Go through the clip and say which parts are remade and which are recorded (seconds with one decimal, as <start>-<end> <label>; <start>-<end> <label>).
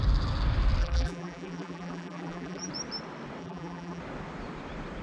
0.0-0.8 recorded; 0.8-2.7 remade; 2.7-3.4 recorded; 3.4-4.0 remade; 4.0-5.0 recorded